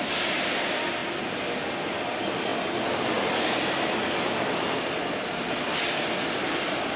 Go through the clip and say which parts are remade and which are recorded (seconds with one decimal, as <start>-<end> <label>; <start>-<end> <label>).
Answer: 0.0-1.0 remade; 1.0-1.7 recorded; 1.7-2.5 remade; 2.5-4.9 recorded; 4.9-7.0 remade

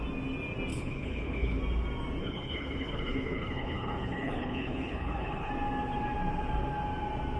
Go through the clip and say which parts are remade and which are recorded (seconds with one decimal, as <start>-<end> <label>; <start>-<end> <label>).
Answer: 0.0-0.7 recorded; 0.7-1.6 remade; 1.6-2.2 recorded; 2.2-5.5 remade; 5.5-7.4 recorded

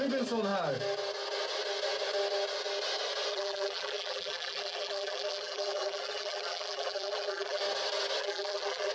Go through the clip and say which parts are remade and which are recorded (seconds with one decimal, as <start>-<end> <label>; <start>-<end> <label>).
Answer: 0.0-3.3 recorded; 3.3-7.6 remade; 7.6-8.2 recorded; 8.2-8.9 remade

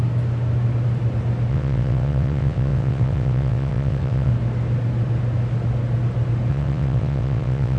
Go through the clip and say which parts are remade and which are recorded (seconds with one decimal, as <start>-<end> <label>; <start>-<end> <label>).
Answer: 0.0-1.5 recorded; 1.5-4.3 remade; 4.3-6.5 recorded; 6.5-7.8 remade

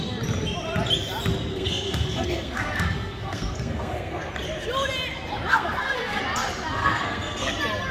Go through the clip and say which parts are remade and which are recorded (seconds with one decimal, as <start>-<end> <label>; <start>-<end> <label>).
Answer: 0.0-1.5 recorded; 1.5-4.3 remade; 4.3-5.5 recorded; 5.5-6.2 remade; 6.2-6.8 recorded; 6.8-7.5 remade; 7.5-7.9 recorded

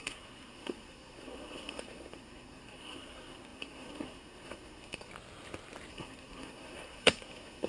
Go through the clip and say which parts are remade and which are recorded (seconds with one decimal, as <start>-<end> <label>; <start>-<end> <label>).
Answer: 0.0-5.1 remade; 5.1-5.9 recorded; 5.9-7.7 remade

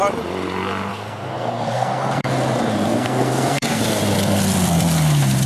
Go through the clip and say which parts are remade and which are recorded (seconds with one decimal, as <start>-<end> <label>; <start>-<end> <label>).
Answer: 0.0-0.9 recorded; 0.9-2.3 remade; 2.3-2.9 recorded; 2.9-3.8 remade; 3.8-5.5 recorded

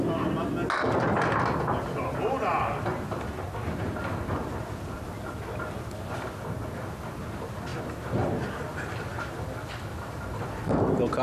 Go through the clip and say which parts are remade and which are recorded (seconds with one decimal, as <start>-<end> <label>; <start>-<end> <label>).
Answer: 0.0-11.2 recorded